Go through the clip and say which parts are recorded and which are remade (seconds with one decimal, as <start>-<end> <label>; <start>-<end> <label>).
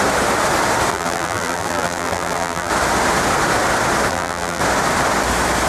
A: 0.0-0.9 recorded; 0.9-2.7 remade; 2.7-4.1 recorded; 4.1-4.6 remade; 4.6-5.7 recorded